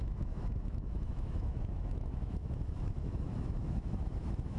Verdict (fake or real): fake